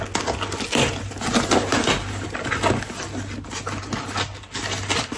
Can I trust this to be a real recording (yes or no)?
yes